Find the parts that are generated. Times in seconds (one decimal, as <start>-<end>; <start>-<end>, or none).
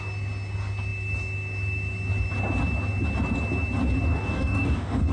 4.1-5.1